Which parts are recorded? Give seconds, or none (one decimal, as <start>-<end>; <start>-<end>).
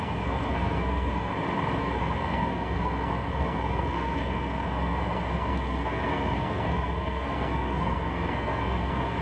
1.3-1.8